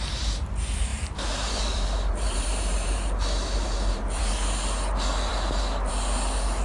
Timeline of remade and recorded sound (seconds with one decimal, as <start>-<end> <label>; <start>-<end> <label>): 0.0-0.9 recorded; 0.9-4.3 remade; 4.3-6.6 recorded